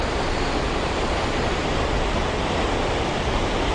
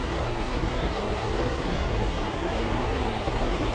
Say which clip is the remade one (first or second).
second